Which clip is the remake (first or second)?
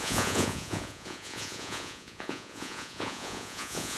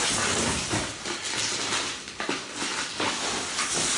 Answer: first